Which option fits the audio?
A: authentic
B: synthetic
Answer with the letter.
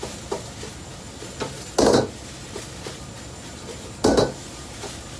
A